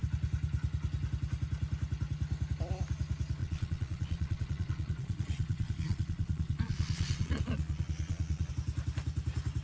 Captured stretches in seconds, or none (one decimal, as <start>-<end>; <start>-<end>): 0.0-3.4; 8.5-9.6